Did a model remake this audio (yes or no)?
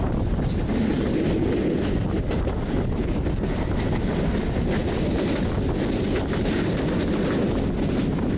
no